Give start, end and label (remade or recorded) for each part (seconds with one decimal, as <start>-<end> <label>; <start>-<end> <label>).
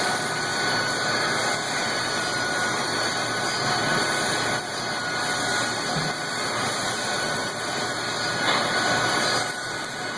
0.0-10.2 recorded